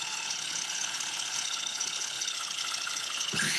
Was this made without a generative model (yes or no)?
no